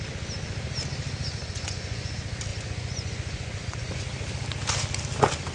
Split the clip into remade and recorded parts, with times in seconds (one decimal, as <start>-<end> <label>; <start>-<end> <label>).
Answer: 0.0-1.4 recorded; 1.4-2.1 remade; 2.1-2.5 recorded; 2.5-4.0 remade; 4.0-5.5 recorded